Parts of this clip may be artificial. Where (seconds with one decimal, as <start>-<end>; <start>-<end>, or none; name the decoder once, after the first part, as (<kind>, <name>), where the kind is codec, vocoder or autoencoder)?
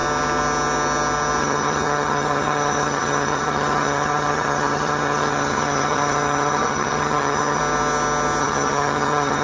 1.4-7.6 (vocoder, HiFi-GAN); 8.4-9.4